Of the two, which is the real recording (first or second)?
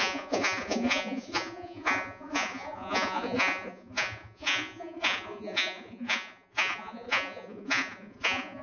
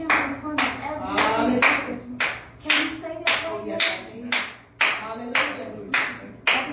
second